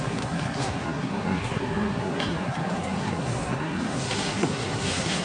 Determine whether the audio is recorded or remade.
remade